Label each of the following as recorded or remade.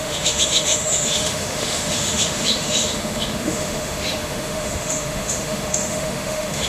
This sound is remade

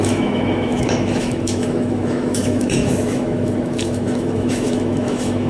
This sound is remade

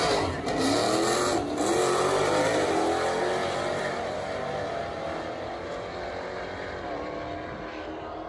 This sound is recorded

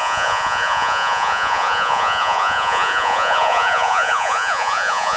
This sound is remade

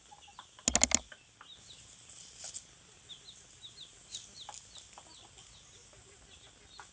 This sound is recorded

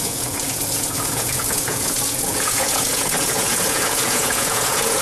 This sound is remade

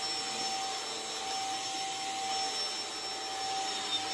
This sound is recorded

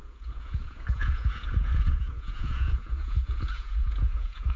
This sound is remade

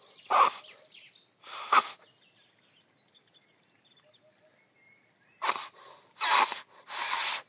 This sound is recorded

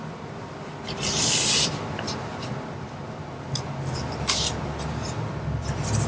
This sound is remade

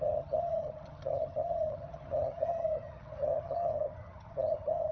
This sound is remade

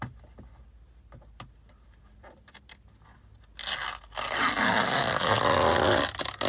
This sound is recorded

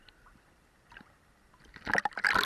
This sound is recorded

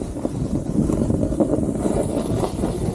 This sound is recorded